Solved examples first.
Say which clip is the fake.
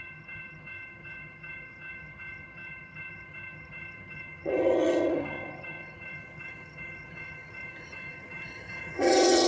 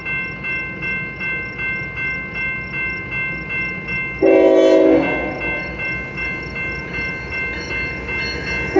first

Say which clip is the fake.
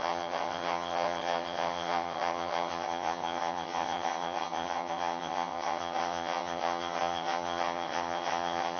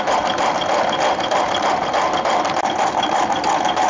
first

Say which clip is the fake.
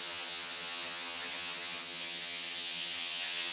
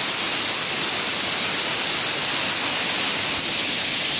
first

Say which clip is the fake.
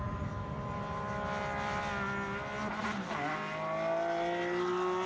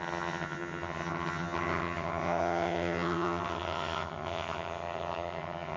second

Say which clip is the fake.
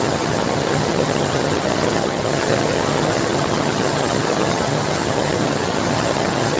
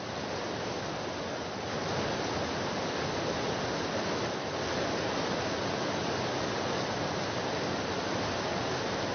first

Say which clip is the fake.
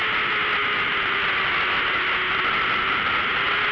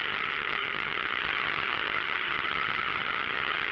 second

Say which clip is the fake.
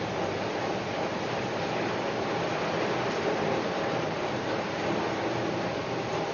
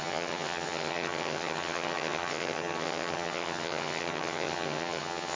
second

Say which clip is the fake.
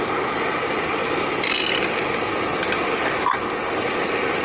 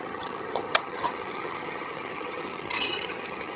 second